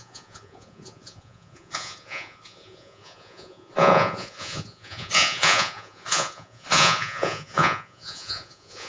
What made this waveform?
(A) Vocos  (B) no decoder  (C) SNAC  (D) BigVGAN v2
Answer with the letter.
A